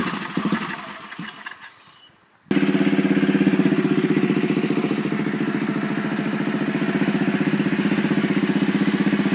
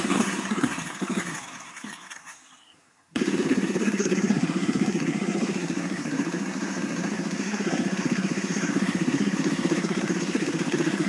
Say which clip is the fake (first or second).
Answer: second